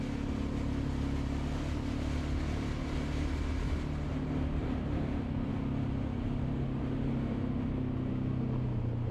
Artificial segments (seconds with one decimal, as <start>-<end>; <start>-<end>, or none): 4.6-5.5